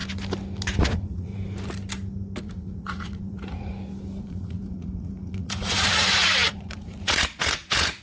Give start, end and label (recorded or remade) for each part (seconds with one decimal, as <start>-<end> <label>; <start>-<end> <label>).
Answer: 0.0-0.8 recorded; 0.8-1.3 remade; 1.3-2.4 recorded; 2.4-3.7 remade; 3.7-4.2 recorded; 4.2-8.0 remade